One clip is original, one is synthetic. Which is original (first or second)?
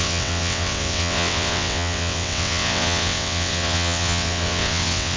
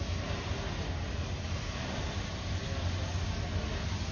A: second